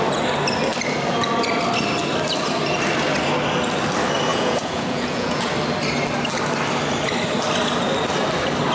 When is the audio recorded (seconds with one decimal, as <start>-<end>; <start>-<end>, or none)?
0.0-4.3; 5.5-8.7